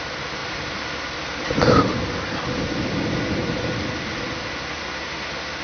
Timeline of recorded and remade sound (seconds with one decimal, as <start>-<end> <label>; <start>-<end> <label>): 0.0-5.6 recorded